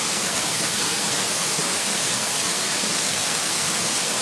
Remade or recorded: remade